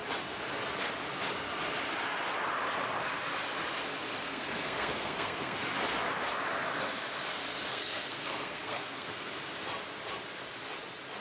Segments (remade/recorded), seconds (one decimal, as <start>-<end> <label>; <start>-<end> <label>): 0.0-4.2 recorded; 4.2-5.6 remade; 5.6-7.7 recorded; 7.7-9.4 remade; 9.4-11.2 recorded